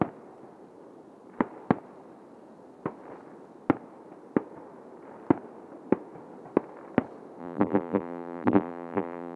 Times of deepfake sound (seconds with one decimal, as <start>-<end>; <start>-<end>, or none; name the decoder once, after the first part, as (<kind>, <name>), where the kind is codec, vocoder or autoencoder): 7.4-9.4 (vocoder, BigVGAN v2)